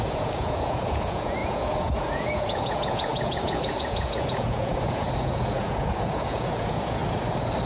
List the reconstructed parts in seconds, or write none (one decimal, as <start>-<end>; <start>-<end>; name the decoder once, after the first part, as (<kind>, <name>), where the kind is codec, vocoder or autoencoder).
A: 0.0-7.0 (vocoder, Vocos)